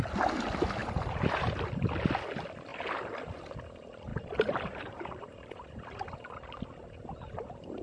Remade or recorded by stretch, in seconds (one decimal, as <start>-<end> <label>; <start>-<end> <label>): 0.0-0.8 recorded; 0.8-1.6 remade; 1.6-4.1 recorded; 4.1-5.7 remade; 5.7-7.8 recorded